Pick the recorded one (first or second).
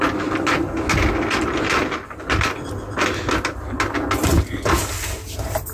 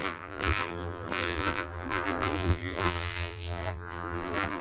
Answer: first